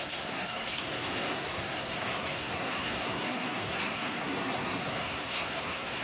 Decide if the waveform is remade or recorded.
remade